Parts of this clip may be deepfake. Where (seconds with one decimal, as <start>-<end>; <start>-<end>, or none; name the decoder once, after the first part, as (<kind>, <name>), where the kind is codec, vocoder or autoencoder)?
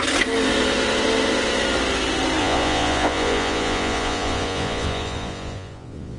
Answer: 2.4-6.2 (vocoder, Vocos)